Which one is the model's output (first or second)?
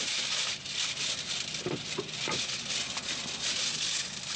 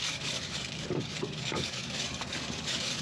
second